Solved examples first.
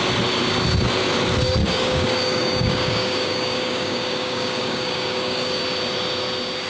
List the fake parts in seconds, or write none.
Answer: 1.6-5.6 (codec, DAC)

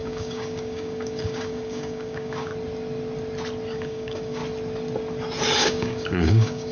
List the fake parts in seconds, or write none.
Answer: 0.0-2.5 (codec, DAC); 3.7-4.4; 5.6-6.7

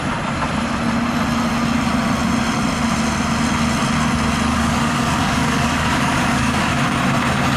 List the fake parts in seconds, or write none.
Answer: 4.5-6.7 (codec, DAC)

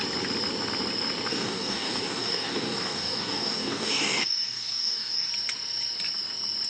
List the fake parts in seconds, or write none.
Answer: 1.3-5.3 (codec, DAC)

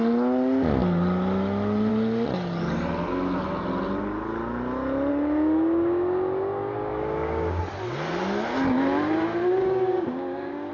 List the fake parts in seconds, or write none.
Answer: 5.1-7.6 (codec, DAC); 9.6-10.7